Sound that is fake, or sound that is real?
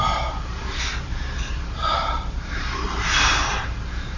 fake